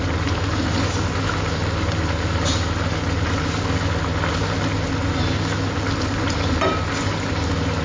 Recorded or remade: recorded